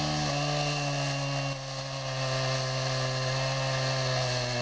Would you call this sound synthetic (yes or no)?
no